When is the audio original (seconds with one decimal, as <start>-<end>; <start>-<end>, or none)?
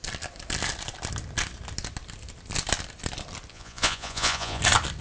0.0-3.5; 4.6-5.0